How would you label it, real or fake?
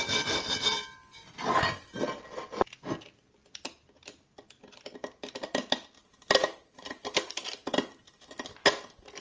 real